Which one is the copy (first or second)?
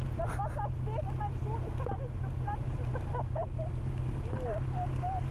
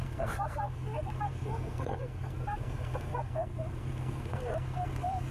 second